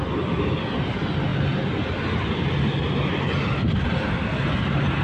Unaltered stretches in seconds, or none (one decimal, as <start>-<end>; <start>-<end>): 0.0-5.0

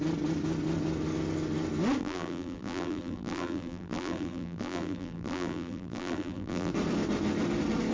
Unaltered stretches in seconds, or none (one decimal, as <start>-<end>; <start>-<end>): 0.0-2.0; 6.7-7.9

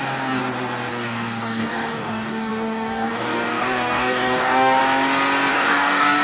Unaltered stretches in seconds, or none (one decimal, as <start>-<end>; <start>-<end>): 0.4-0.9; 4.8-5.5

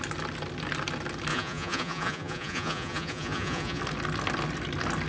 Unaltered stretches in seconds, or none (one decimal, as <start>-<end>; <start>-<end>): 0.0-1.3; 3.8-5.1

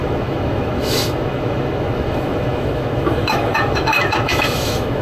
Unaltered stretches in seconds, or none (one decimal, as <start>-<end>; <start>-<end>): none